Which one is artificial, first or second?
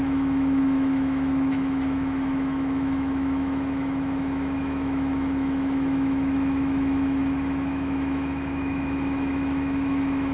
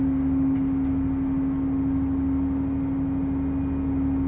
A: first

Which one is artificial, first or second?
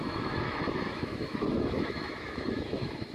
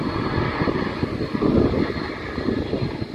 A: first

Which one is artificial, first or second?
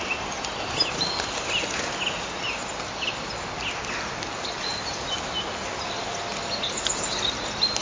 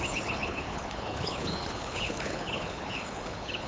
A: second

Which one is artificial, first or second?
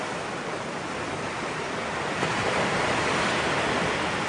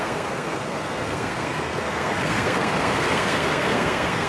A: second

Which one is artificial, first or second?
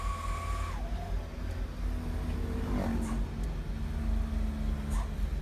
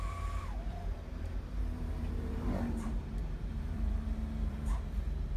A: second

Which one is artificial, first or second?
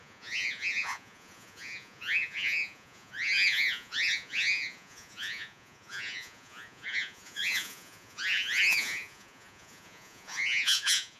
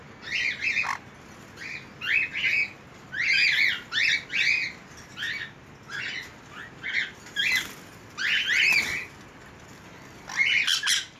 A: first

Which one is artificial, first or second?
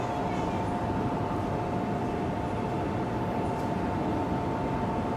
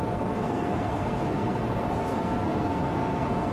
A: second